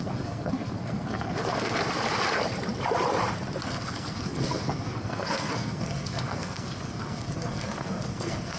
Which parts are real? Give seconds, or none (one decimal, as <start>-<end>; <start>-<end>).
1.8-3.6